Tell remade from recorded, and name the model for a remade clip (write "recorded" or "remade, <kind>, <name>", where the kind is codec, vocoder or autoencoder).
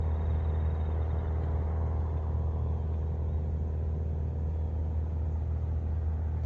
recorded